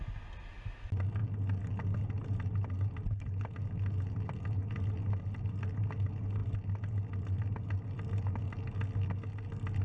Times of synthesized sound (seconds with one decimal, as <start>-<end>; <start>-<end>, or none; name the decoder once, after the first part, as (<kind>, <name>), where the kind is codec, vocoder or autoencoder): none